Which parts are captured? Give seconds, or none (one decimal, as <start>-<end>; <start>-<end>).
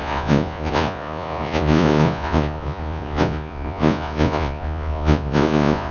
none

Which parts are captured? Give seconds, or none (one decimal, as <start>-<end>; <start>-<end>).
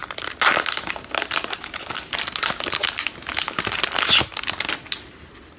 0.0-5.6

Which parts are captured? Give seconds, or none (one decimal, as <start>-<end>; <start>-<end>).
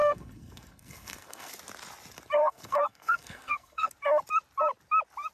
1.5-2.4; 3.9-5.3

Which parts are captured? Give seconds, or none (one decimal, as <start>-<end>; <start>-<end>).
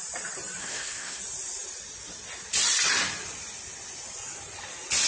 0.0-0.6; 1.2-5.1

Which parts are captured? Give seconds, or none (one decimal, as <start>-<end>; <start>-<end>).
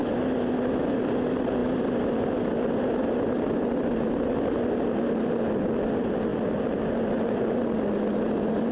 0.0-8.7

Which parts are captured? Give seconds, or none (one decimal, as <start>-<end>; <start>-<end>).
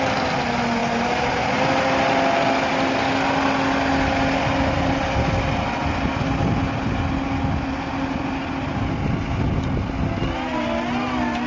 0.0-11.5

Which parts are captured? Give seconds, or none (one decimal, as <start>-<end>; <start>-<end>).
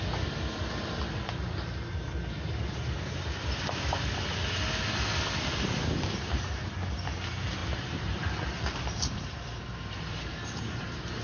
0.0-7.6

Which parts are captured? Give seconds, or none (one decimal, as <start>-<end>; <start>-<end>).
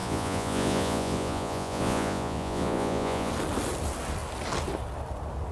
3.3-5.5